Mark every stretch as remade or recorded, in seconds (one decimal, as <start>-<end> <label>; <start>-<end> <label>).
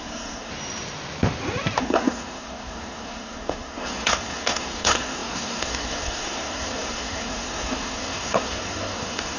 0.0-0.5 remade; 0.5-1.8 recorded; 1.8-9.4 remade